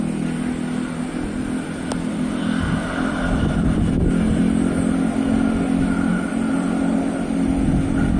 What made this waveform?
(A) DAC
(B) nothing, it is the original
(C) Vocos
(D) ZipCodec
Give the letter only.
B